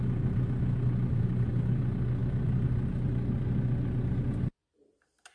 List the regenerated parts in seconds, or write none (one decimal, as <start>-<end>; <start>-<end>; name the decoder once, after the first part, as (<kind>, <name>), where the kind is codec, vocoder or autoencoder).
1.1-1.7 (vocoder, BigVGAN v2)